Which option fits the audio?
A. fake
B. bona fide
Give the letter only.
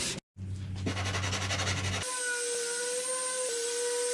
B